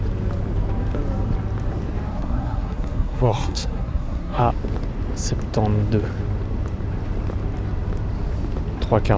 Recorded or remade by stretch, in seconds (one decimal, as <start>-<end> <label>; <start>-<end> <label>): 0.0-2.1 recorded; 2.1-4.4 remade; 4.4-9.2 recorded

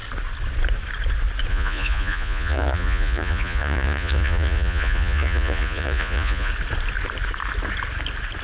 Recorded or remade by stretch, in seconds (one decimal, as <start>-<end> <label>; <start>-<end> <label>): 0.0-1.5 recorded; 1.5-6.5 remade; 6.5-8.4 recorded

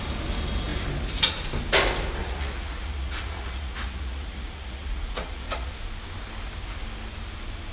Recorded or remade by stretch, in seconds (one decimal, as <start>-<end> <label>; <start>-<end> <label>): 0.0-2.2 recorded; 2.2-5.7 remade; 5.7-7.7 recorded

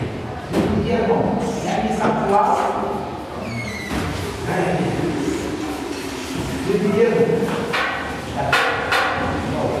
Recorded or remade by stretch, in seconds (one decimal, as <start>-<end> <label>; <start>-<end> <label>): 0.0-9.8 recorded